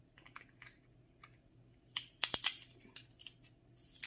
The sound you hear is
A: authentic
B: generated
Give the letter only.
A